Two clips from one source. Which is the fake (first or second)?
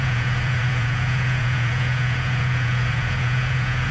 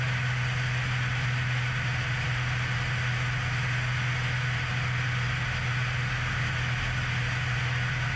first